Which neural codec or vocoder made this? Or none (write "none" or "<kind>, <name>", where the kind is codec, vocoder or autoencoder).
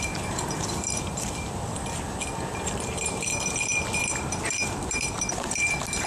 vocoder, BigVGAN v2